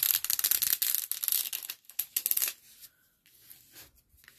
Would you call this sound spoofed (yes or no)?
no